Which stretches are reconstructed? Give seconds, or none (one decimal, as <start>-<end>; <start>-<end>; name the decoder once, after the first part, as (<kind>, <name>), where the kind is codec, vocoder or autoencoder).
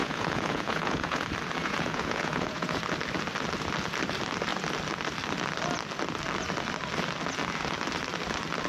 0.0-1.2 (vocoder, Vocos); 1.6-2.8